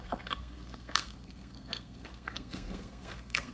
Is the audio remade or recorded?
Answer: remade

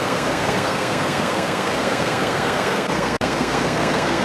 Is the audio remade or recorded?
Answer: remade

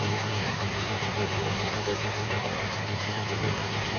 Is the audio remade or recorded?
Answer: remade